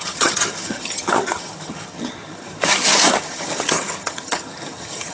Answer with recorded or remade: remade